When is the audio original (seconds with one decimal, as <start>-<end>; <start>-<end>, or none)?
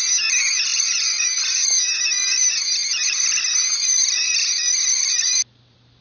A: 0.0-6.0